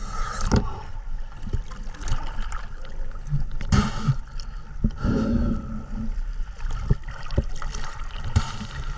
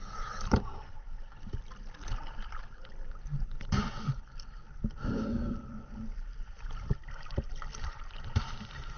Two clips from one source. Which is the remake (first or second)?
second